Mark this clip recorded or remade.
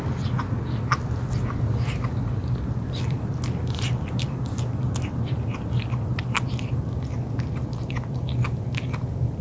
recorded